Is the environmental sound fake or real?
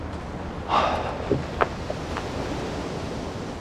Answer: real